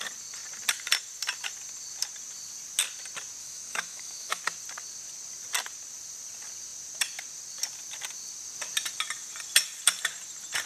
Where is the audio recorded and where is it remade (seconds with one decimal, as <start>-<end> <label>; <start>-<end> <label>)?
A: 0.0-3.4 recorded; 3.4-4.4 remade; 4.4-10.7 recorded